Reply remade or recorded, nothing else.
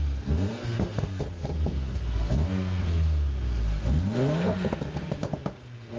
remade